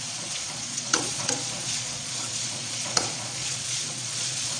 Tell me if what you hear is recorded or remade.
remade